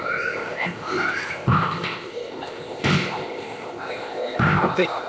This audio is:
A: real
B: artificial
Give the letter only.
B